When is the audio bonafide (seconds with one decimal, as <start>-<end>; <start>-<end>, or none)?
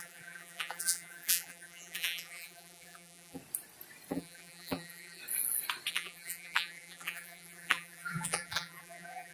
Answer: 3.4-4.1; 5.2-5.9